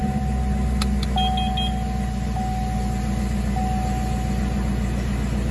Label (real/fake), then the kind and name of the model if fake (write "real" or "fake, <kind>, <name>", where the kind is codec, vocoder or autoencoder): real